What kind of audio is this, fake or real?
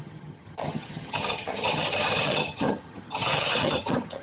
fake